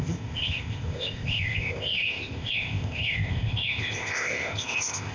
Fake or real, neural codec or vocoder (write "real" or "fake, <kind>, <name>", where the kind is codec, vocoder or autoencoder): fake, codec, ZipCodec